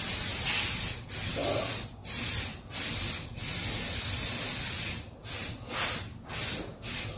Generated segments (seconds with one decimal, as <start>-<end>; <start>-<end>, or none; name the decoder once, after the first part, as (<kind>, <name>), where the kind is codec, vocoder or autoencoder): none